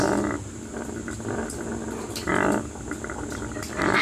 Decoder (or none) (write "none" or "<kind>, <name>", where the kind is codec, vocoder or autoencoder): none